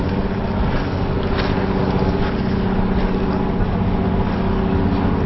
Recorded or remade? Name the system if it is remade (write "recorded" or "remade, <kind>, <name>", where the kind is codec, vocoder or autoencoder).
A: recorded